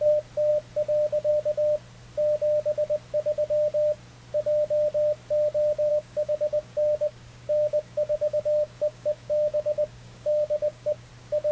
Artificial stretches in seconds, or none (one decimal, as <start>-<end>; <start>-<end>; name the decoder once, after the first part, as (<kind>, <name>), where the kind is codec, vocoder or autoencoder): 5.9-11.1 (codec, DAC)